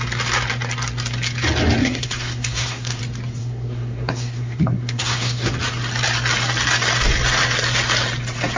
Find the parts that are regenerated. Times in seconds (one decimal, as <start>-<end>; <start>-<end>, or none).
1.8-3.0; 3.4-5.5